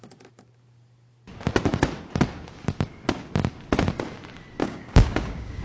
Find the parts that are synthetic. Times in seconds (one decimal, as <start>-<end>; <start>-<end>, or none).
4.6-5.6